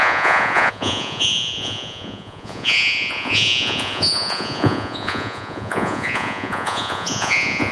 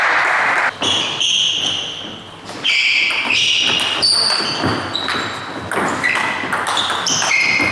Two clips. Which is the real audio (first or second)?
second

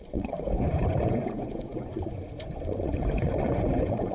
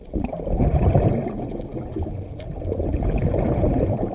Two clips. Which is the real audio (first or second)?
second